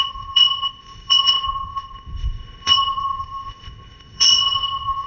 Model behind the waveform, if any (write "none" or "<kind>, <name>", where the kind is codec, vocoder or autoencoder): codec, ZipCodec